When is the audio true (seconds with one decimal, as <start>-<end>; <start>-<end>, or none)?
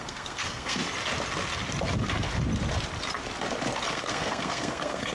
0.8-3.9